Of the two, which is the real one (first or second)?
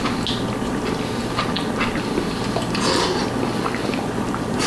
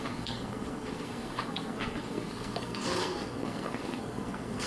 first